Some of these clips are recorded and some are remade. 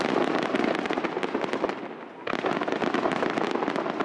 recorded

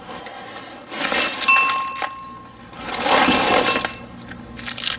recorded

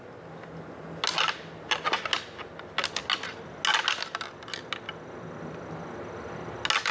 recorded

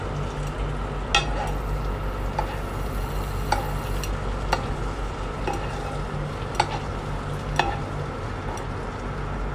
recorded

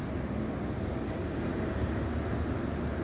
recorded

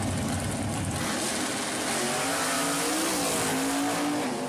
recorded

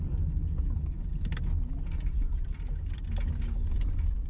recorded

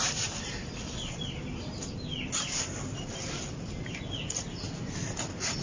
recorded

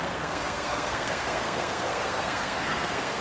remade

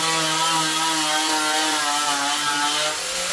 recorded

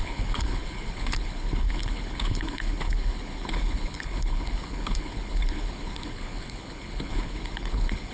remade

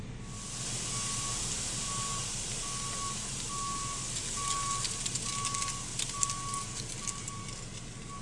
recorded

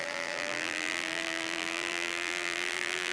remade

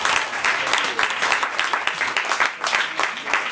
recorded